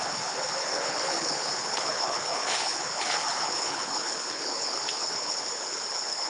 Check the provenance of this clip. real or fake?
fake